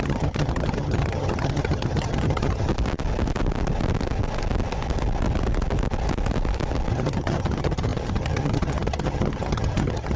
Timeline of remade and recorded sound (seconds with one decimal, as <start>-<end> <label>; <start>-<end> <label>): 0.0-2.7 remade; 2.7-6.9 recorded; 6.9-10.2 remade